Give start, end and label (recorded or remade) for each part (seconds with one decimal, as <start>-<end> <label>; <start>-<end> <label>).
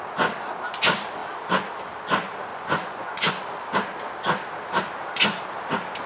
0.0-2.5 recorded; 2.5-3.3 remade; 3.3-6.1 recorded